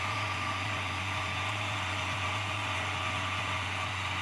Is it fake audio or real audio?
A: fake